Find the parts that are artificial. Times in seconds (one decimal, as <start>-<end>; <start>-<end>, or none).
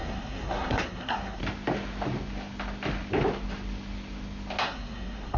0.0-1.4; 4.6-5.4